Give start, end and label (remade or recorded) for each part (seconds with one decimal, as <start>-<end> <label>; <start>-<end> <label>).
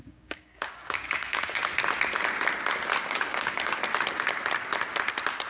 0.0-1.6 remade; 1.6-3.0 recorded; 3.0-3.8 remade; 3.8-5.5 recorded